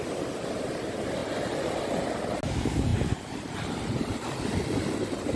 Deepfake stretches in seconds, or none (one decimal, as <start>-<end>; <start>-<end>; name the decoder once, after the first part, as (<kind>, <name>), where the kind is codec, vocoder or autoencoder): 2.9-4.4 (vocoder, BigVGAN v2)